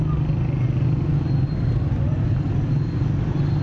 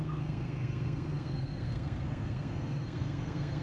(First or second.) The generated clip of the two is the second